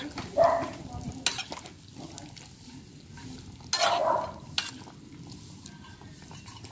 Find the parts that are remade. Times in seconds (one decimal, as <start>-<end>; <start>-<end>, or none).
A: none